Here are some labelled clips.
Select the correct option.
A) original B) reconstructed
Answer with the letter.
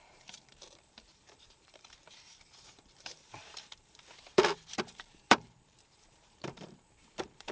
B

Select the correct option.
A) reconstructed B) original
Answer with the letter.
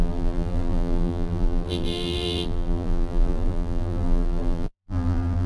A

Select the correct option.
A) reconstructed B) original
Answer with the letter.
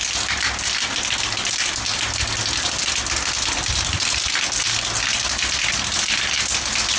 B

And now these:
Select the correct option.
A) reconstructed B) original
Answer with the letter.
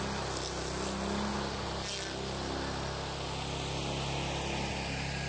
B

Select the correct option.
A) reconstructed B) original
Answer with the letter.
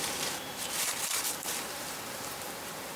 A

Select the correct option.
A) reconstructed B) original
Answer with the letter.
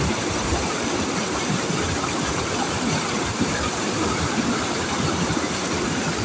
A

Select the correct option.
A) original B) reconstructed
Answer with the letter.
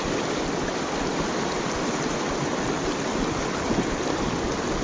A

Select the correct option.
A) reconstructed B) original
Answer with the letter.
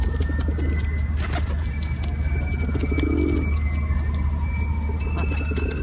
B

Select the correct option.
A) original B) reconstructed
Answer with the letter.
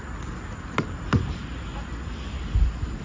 A